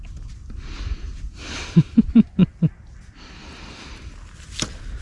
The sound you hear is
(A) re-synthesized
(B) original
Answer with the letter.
B